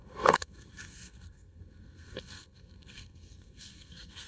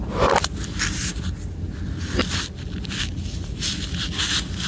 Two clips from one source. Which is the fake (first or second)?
first